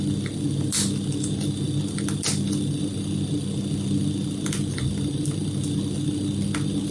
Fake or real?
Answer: real